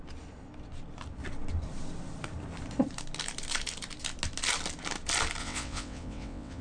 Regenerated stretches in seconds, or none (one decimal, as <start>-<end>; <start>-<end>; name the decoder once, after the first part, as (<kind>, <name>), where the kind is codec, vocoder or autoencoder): 5.4-6.6 (vocoder, WaveNeXt)